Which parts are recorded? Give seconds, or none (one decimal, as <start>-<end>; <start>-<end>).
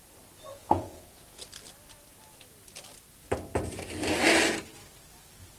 0.0-0.5; 1.4-5.6